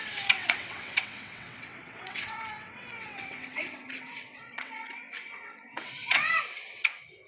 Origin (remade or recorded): remade